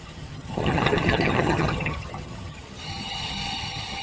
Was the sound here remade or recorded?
remade